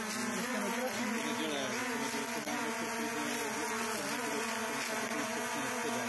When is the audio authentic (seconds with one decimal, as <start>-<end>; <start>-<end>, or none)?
0.0-0.5; 1.0-6.1